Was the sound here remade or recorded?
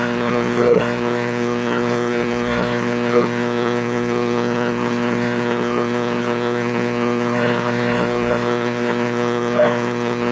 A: remade